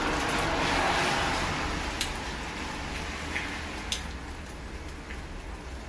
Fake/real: real